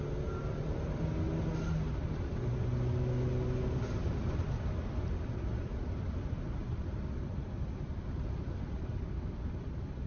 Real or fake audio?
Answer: real